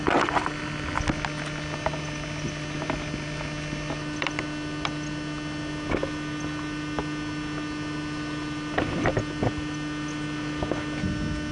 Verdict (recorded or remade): recorded